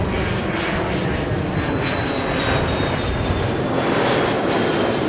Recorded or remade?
recorded